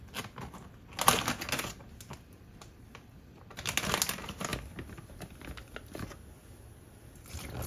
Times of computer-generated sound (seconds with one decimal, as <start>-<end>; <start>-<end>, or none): none